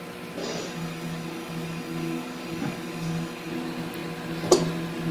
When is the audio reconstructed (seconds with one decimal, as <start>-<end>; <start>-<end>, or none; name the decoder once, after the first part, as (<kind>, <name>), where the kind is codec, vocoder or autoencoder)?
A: 0.4-3.5 (codec, DAC)